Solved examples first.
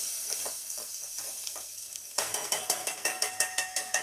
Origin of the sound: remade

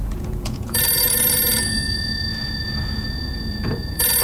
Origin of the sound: remade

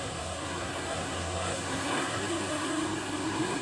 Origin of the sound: remade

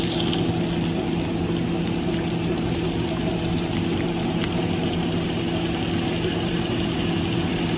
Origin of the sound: recorded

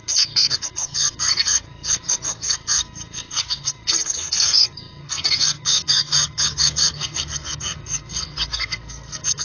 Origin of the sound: remade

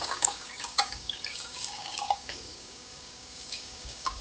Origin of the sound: remade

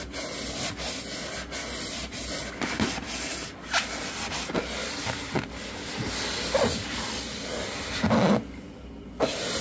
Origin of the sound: recorded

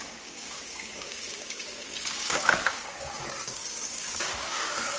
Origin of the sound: remade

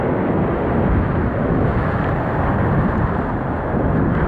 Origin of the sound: recorded